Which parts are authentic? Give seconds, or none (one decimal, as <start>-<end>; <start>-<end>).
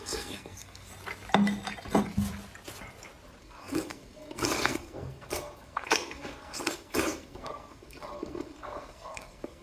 0.9-3.4